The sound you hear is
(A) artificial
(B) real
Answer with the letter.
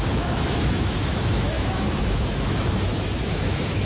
A